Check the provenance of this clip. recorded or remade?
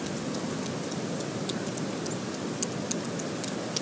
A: recorded